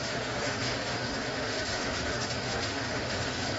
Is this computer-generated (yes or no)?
yes